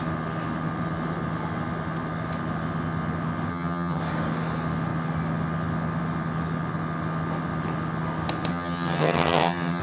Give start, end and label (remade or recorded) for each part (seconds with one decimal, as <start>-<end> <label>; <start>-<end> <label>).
0.0-3.5 recorded; 3.5-4.0 remade; 4.0-8.5 recorded; 8.5-9.8 remade